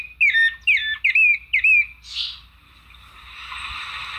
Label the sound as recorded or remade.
recorded